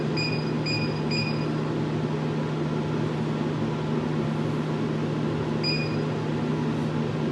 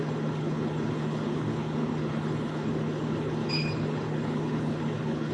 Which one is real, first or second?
first